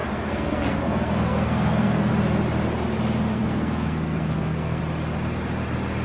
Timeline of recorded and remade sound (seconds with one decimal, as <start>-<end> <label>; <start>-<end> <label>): 0.0-2.1 remade; 2.1-3.3 recorded; 3.3-4.8 remade; 4.8-6.0 recorded